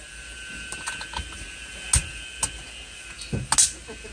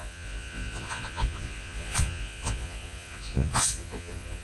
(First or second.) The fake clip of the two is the second